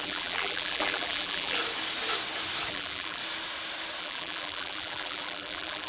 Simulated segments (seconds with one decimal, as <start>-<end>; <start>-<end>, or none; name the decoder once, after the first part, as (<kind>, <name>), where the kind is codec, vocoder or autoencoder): 0.0-1.6 (vocoder, BigVGAN v2); 2.7-3.2; 4.0-5.9